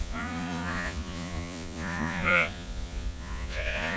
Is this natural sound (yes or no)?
no